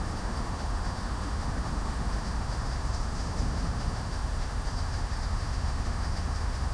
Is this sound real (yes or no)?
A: no